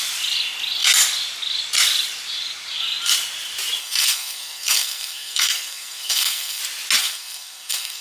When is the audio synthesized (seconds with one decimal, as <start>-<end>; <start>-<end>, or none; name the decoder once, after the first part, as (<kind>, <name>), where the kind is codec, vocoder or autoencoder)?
3.8-6.6 (codec, SNAC); 7.0-8.0